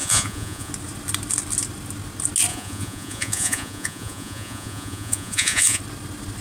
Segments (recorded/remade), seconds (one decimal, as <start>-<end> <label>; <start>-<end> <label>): 0.0-0.7 remade; 0.7-2.5 recorded; 2.5-5.8 remade; 5.8-6.4 recorded

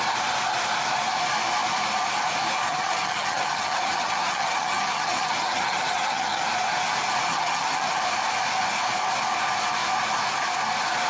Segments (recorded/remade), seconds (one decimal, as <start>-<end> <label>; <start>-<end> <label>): 0.0-2.7 recorded; 2.7-6.4 remade; 6.4-7.3 recorded; 7.3-8.0 remade; 8.0-11.1 recorded

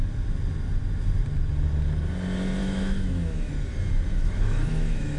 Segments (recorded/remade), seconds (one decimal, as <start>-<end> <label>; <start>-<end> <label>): 0.0-2.6 recorded; 2.6-3.5 remade; 3.5-4.1 recorded; 4.1-5.2 remade

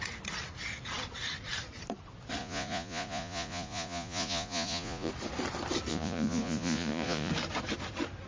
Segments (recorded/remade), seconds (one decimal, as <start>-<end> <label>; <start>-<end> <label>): 0.0-2.4 recorded; 2.4-5.1 remade; 5.1-5.9 recorded; 5.9-7.3 remade; 7.3-8.3 recorded

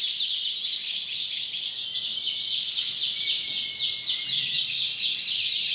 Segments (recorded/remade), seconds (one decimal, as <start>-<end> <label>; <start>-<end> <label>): 0.0-5.7 recorded

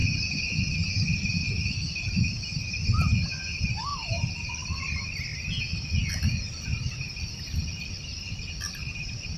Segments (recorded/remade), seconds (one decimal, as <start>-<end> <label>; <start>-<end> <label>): 0.0-2.3 remade; 2.3-9.4 recorded

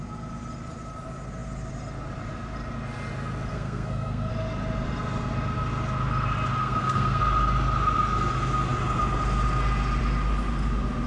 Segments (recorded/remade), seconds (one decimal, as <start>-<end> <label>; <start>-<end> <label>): 0.0-3.5 recorded; 3.5-4.3 remade; 4.3-6.6 recorded; 6.6-7.2 remade; 7.2-11.1 recorded

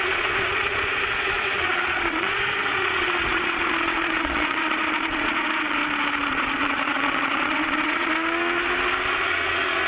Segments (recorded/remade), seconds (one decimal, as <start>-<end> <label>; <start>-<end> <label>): 0.0-5.8 remade; 5.8-6.3 recorded; 6.3-8.1 remade; 8.1-9.1 recorded; 9.1-9.9 remade